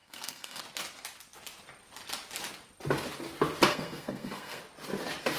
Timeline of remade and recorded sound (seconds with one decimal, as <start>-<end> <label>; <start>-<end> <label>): 0.0-0.6 remade; 0.6-3.7 recorded; 3.7-4.6 remade; 4.6-5.4 recorded